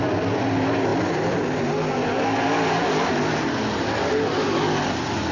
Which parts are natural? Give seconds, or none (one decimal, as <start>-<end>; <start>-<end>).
0.0-5.3